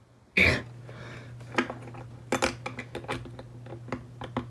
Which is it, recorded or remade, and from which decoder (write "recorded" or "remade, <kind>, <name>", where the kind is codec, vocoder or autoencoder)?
recorded